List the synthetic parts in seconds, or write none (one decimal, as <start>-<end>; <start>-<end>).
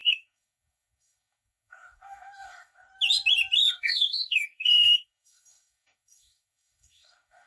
0.0-2.9; 3.7-7.5